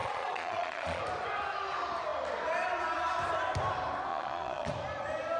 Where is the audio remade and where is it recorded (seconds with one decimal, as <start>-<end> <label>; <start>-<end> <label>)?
0.0-1.0 remade; 1.0-4.1 recorded; 4.1-4.7 remade; 4.7-5.4 recorded